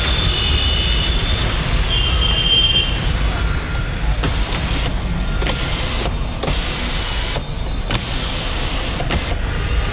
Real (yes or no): yes